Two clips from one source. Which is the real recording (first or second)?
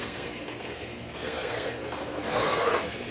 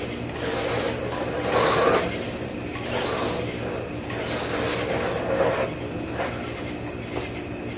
second